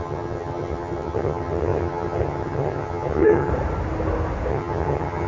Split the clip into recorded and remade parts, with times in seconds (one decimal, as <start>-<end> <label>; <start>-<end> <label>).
0.0-3.5 remade; 3.5-4.5 recorded; 4.5-5.3 remade